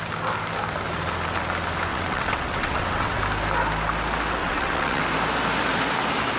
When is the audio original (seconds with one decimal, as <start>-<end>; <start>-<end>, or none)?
0.0-1.9; 3.2-4.4; 5.0-6.4